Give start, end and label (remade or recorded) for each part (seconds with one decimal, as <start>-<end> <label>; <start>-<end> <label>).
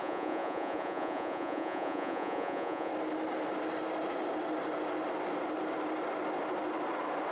0.0-2.9 remade; 2.9-7.3 recorded